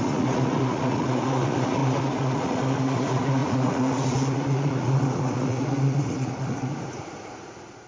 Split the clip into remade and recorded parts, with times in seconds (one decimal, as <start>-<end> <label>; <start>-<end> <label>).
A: 0.0-7.9 remade